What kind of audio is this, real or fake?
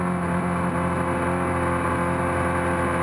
real